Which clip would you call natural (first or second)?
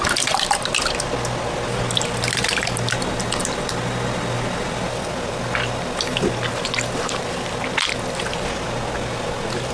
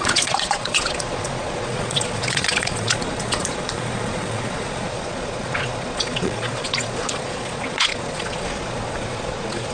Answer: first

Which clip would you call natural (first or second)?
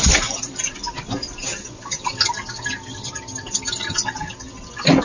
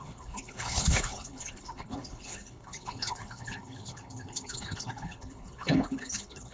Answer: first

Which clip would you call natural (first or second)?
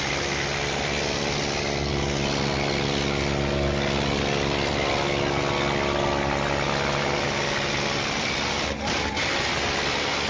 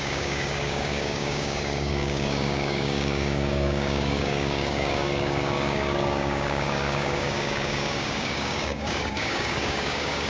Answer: first